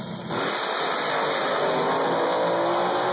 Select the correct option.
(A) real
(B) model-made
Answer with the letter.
A